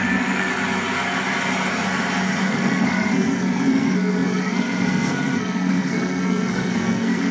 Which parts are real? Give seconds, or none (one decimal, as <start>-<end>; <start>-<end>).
0.5-2.5